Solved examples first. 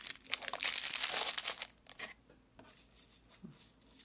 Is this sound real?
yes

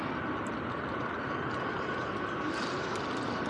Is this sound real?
yes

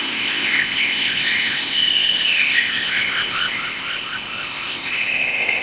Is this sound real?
no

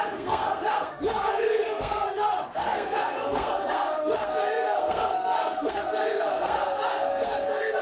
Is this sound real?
no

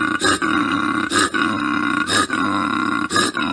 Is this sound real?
yes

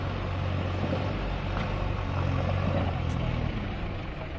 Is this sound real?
yes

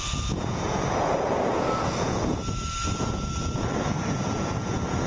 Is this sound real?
no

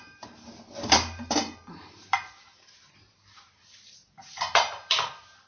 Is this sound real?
no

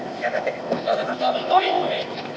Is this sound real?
no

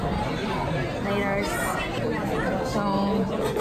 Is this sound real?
yes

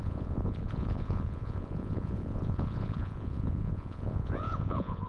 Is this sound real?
no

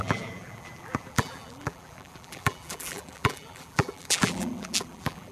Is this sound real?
no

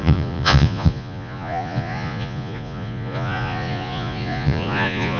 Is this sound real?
no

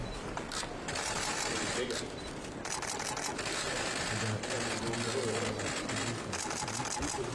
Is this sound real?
yes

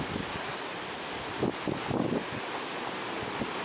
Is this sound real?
yes